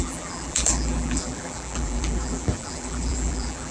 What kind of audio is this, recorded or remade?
remade